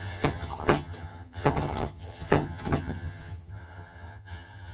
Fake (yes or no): yes